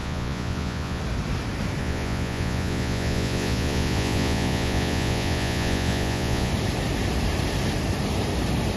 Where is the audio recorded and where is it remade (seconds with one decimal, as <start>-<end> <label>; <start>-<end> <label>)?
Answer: 0.0-1.0 remade; 1.0-1.8 recorded; 1.8-6.5 remade; 6.5-8.8 recorded

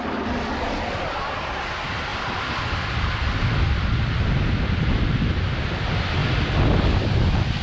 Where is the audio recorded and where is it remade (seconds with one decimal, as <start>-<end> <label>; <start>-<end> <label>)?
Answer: 0.0-7.6 recorded

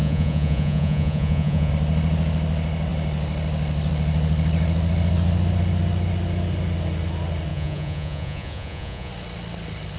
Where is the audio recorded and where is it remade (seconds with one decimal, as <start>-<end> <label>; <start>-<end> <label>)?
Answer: 0.0-1.7 remade; 1.7-7.5 recorded; 7.5-9.1 remade; 9.1-10.0 recorded

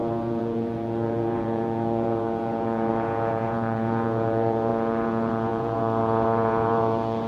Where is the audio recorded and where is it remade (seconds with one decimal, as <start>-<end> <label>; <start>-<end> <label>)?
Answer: 0.0-7.3 remade

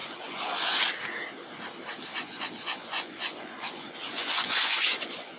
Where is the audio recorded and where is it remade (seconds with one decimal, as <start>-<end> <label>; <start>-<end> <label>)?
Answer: 0.0-0.8 remade; 0.8-2.1 recorded; 2.1-5.4 remade

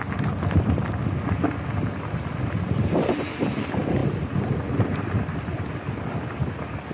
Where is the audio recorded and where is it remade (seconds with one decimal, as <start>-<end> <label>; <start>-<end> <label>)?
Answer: 0.0-6.9 recorded

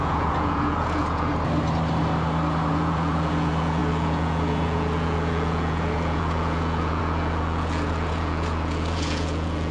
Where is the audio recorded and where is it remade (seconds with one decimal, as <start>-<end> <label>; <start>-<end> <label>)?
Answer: 0.0-1.3 remade; 1.3-2.7 recorded; 2.7-9.7 remade

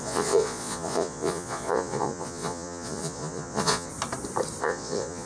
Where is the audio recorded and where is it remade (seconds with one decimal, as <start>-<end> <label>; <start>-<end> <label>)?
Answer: 0.0-3.9 remade; 3.9-4.6 recorded; 4.6-5.3 remade